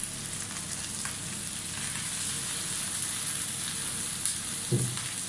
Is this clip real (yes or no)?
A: yes